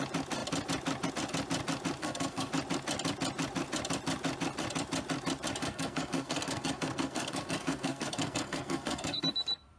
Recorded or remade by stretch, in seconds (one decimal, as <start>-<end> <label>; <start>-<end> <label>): 0.0-2.0 recorded; 2.0-2.5 remade; 2.5-5.6 recorded; 5.6-9.2 remade; 9.2-9.8 recorded

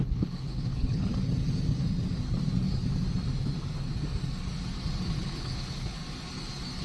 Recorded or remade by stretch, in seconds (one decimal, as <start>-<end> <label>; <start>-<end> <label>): 0.0-1.1 remade; 1.1-5.2 recorded; 5.2-6.0 remade; 6.0-6.8 recorded

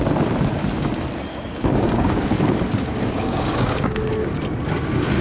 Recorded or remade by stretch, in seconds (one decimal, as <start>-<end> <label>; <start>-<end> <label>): 0.0-1.3 recorded; 1.3-4.4 remade; 4.4-5.2 recorded